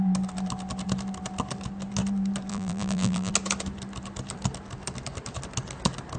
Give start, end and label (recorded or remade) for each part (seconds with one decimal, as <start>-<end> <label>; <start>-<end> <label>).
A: 0.0-2.5 recorded; 2.5-3.3 remade; 3.3-6.2 recorded